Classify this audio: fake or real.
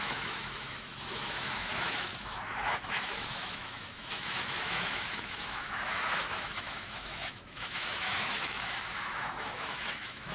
fake